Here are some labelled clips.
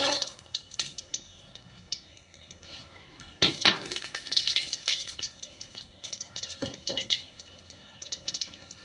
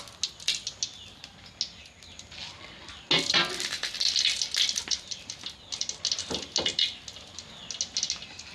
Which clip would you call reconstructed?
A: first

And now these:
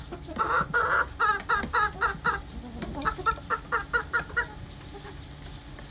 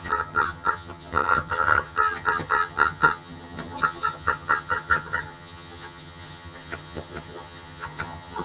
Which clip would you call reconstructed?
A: second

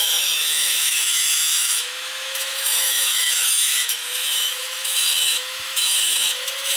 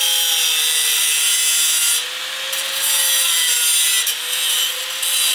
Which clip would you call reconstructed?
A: first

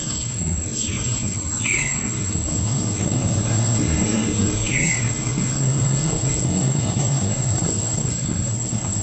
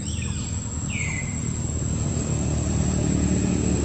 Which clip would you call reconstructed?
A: first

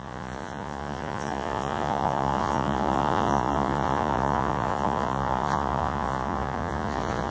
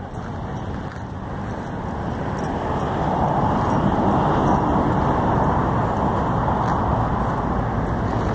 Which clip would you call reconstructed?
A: first